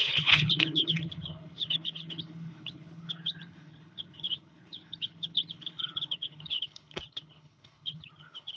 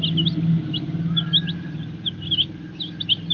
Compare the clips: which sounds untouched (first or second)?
second